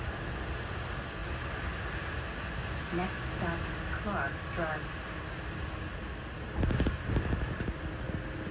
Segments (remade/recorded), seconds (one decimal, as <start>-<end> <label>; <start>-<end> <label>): 0.0-8.5 recorded